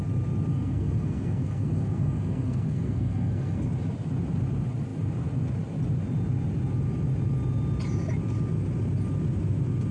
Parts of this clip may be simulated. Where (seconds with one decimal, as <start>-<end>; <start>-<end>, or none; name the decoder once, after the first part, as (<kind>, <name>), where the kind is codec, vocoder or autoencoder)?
0.5-3.7 (codec, SNAC)